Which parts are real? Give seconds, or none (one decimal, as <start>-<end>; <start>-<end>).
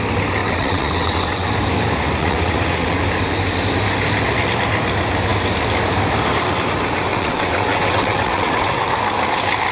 0.0-0.4; 1.5-2.2; 3.0-7.1; 8.9-9.7